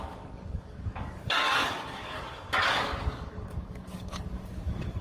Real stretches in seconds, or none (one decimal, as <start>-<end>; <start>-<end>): none